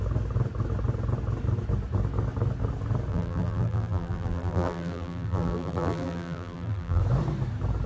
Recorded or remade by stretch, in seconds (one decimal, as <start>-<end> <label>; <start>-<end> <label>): 0.0-3.1 recorded; 3.1-7.0 remade; 7.0-7.9 recorded